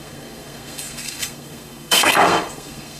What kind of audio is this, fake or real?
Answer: fake